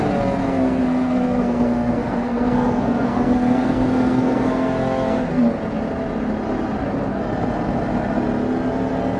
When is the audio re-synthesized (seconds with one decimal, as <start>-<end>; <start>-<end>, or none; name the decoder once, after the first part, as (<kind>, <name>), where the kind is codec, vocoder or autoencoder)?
0.4-5.4 (codec, SNAC)